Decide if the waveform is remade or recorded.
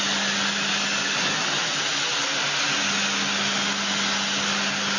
recorded